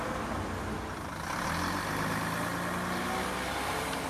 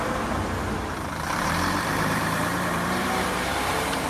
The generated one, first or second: second